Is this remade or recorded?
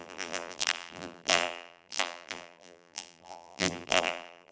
remade